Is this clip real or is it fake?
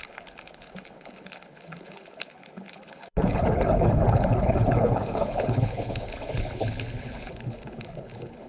fake